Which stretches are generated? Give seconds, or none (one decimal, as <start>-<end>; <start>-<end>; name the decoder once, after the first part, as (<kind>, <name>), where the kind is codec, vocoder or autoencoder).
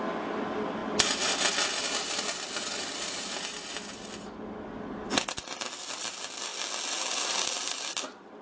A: none